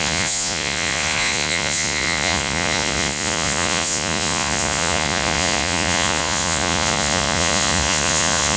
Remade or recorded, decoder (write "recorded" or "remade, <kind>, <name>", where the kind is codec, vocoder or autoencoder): remade, vocoder, Vocos